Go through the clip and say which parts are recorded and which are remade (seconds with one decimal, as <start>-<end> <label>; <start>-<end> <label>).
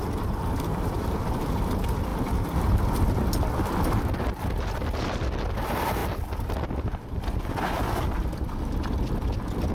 0.0-1.6 remade; 1.6-9.7 recorded